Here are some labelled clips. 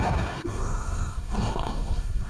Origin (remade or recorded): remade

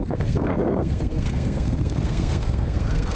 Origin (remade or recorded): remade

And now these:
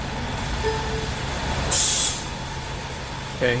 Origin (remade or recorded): recorded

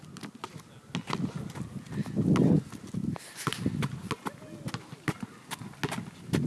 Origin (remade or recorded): recorded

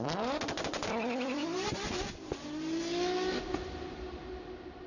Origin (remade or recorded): recorded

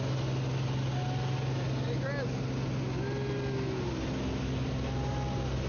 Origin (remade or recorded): recorded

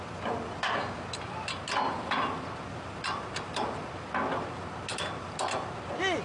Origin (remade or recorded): recorded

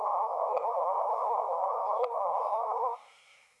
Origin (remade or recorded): remade